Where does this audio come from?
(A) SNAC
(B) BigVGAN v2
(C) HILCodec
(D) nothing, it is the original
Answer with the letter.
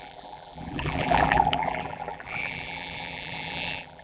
B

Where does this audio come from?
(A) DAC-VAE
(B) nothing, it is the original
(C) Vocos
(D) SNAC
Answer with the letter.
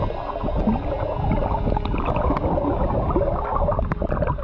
B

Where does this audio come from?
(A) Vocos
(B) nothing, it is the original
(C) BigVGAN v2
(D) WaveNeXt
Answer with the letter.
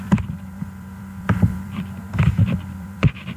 C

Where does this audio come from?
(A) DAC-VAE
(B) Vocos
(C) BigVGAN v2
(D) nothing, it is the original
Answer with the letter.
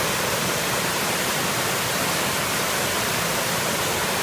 D